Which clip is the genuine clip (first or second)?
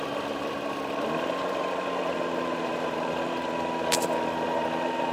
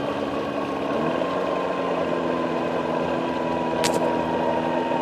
second